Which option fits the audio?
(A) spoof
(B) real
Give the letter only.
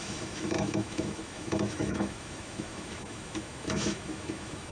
A